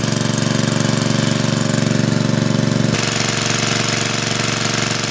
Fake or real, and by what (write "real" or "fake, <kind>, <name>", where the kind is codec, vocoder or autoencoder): real